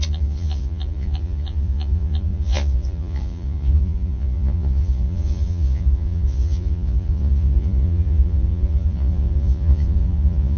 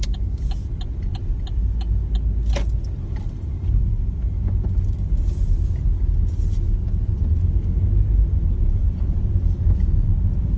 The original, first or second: second